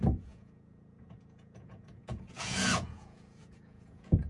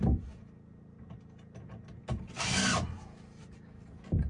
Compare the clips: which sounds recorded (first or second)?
second